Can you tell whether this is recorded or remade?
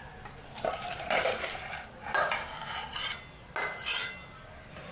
recorded